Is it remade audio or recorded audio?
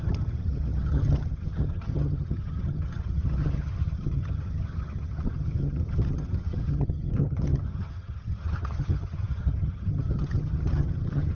remade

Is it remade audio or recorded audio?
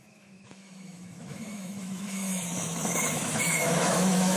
remade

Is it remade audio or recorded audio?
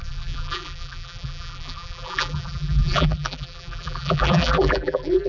remade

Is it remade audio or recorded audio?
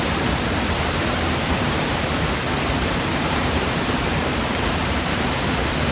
remade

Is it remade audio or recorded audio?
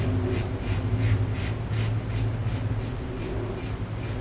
recorded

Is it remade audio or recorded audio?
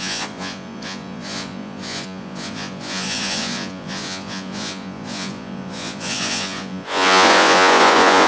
remade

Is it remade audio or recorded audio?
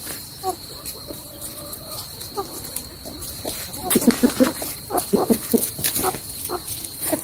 remade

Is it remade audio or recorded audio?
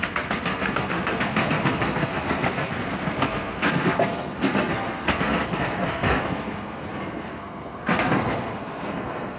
remade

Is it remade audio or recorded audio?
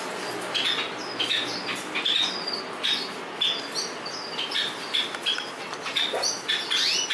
recorded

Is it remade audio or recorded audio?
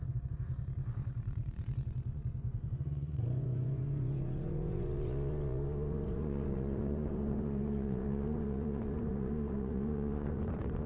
remade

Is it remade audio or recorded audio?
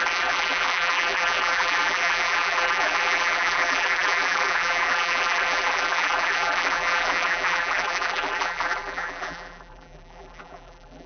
remade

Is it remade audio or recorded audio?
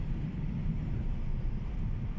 remade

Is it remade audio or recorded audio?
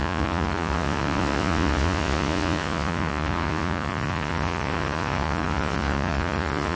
remade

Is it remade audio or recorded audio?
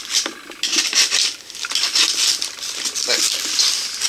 recorded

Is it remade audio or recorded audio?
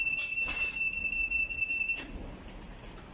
recorded